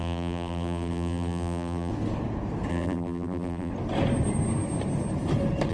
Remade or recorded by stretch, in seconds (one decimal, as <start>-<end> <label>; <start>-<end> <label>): 0.0-1.9 remade; 1.9-2.7 recorded; 2.7-3.7 remade; 3.7-5.7 recorded